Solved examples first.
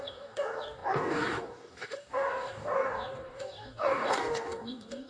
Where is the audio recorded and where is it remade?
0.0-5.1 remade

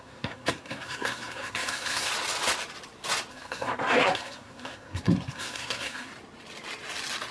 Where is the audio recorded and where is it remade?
0.0-2.1 remade; 2.1-3.3 recorded; 3.3-6.1 remade; 6.1-7.3 recorded

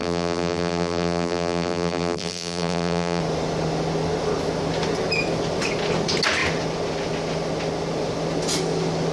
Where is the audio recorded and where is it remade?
0.0-3.2 remade; 3.2-9.1 recorded

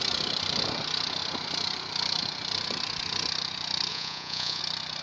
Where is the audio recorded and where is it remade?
0.0-3.9 recorded; 3.9-4.6 remade; 4.6-5.0 recorded

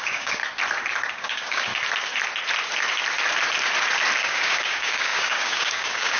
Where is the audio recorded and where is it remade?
0.0-0.4 remade; 0.4-1.1 recorded; 1.1-1.7 remade; 1.7-4.2 recorded; 4.2-6.2 remade

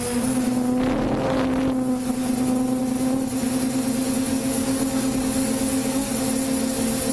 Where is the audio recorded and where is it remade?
0.0-4.3 recorded; 4.3-6.1 remade; 6.1-7.1 recorded